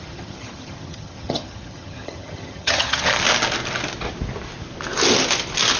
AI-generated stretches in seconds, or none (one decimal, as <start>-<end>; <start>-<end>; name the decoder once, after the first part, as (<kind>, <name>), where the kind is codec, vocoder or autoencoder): 0.0-3.1 (vocoder, HiFi-GAN)